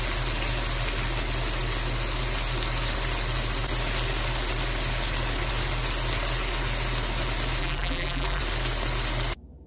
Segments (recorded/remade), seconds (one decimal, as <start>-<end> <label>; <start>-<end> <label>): 0.0-7.6 recorded; 7.6-8.4 remade; 8.4-9.7 recorded